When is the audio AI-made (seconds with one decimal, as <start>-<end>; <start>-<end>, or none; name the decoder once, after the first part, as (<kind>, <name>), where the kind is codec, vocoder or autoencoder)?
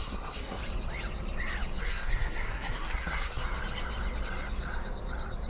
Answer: 0.0-0.6 (codec, SNAC); 1.8-3.4